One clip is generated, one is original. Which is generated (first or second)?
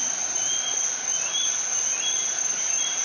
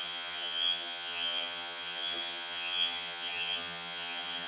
second